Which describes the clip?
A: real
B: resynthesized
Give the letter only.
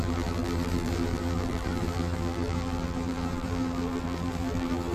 B